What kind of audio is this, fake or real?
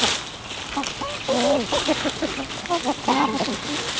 real